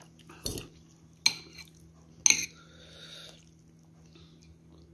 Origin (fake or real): real